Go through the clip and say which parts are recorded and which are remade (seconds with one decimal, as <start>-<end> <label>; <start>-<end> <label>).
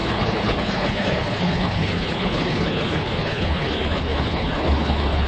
0.0-5.3 remade